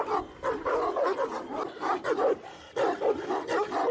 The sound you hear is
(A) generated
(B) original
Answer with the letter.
B